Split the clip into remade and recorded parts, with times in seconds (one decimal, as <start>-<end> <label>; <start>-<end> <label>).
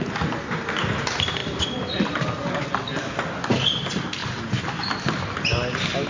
0.0-1.4 recorded; 1.4-2.1 remade; 2.1-6.1 recorded